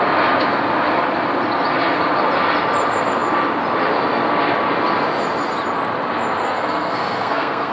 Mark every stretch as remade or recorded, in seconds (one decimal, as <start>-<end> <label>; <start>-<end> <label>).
0.0-6.4 recorded; 6.4-7.7 remade